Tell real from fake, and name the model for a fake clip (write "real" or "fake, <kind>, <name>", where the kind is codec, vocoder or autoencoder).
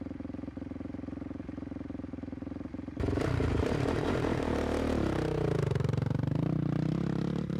fake, vocoder, BigVGAN v2